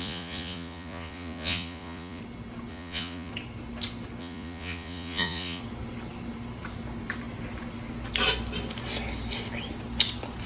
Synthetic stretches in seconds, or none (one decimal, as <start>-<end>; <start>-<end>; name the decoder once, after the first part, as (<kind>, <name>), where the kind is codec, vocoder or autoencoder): 0.0-2.2 (vocoder, Vocos); 2.7-3.3; 4.2-5.6